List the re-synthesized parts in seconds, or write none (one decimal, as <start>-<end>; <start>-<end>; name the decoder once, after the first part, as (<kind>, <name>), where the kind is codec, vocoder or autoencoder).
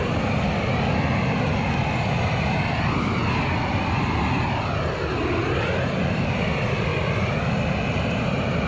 none